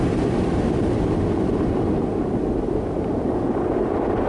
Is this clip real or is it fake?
real